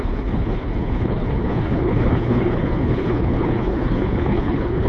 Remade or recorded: remade